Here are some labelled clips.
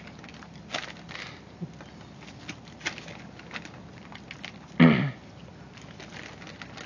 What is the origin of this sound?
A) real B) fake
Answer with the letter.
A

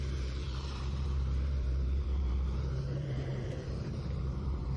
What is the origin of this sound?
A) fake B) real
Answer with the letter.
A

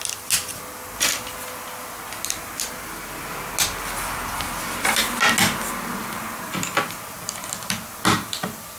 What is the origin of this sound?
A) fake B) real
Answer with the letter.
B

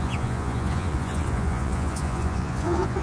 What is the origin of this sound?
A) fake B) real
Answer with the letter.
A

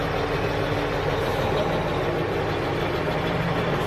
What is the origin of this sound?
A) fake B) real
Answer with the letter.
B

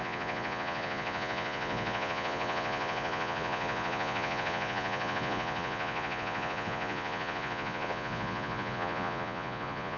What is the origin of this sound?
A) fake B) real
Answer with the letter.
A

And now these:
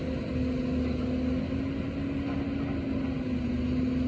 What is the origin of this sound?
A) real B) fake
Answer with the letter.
A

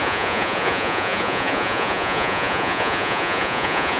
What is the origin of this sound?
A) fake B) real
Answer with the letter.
A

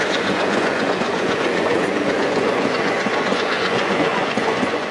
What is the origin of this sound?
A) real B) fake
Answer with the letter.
B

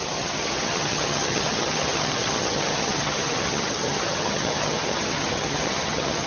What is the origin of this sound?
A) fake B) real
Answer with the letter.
A